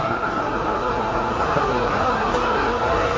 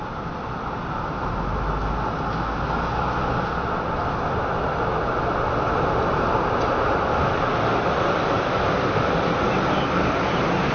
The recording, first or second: second